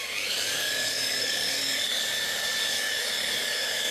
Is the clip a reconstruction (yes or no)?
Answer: yes